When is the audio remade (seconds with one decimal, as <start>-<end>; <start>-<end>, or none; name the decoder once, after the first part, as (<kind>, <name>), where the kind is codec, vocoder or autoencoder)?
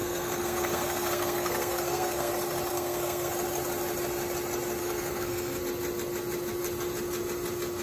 0.0-2.3 (codec, SNAC); 2.7-3.3; 4.8-5.6